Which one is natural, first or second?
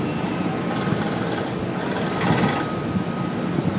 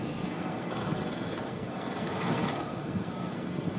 first